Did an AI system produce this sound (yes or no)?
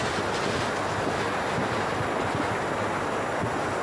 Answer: no